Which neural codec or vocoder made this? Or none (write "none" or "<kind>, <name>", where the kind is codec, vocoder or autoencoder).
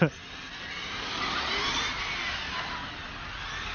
none